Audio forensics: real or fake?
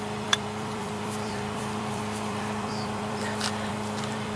fake